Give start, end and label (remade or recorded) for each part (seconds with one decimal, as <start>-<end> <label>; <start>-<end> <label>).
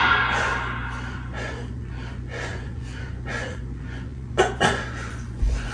0.0-0.5 remade; 0.5-1.1 recorded; 1.1-5.7 remade